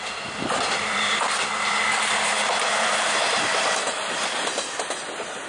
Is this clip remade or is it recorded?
remade